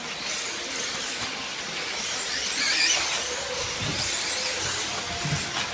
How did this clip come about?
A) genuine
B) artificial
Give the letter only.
A